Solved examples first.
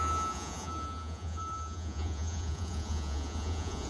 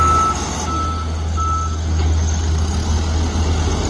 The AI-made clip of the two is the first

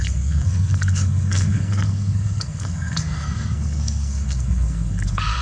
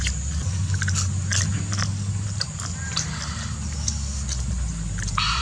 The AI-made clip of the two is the first